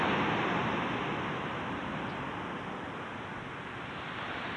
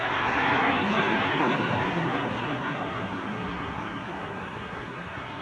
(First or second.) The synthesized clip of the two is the second